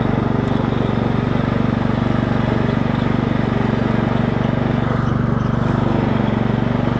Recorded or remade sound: recorded